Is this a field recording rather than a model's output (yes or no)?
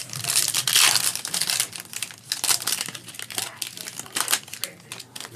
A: yes